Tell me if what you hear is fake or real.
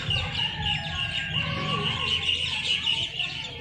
real